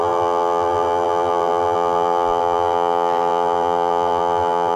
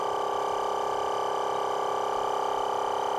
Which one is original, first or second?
second